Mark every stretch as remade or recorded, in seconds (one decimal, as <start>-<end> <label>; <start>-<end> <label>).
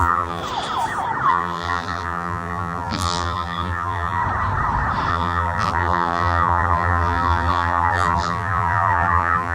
0.0-0.4 remade; 0.4-1.3 recorded; 1.3-4.2 remade; 4.2-5.1 recorded; 5.1-9.5 remade